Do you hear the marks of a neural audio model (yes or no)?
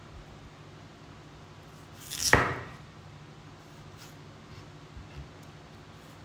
no